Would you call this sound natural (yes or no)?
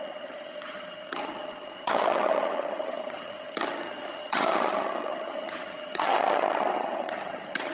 no